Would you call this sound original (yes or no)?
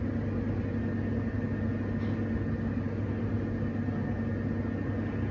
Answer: yes